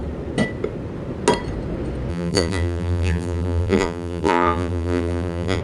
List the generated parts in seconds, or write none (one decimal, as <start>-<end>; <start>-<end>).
2.1-5.6